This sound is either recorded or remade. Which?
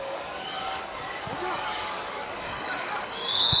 remade